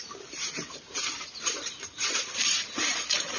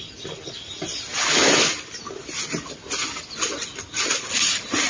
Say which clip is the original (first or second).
second